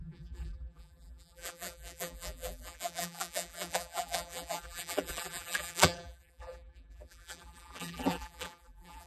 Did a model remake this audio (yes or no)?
yes